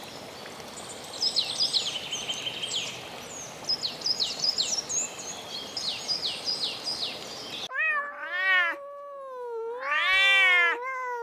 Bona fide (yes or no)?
yes